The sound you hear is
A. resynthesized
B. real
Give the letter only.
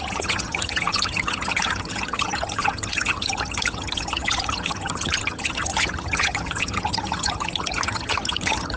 A